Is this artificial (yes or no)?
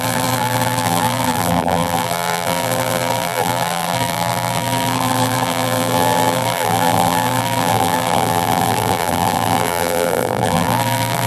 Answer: yes